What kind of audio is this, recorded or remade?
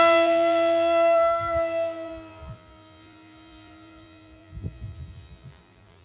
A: remade